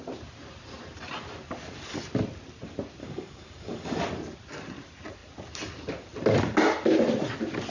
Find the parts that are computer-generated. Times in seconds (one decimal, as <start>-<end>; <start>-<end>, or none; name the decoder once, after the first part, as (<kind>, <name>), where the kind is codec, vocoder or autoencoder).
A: 3.0-4.0 (codec, DAC)